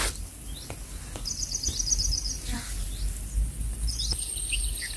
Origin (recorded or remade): recorded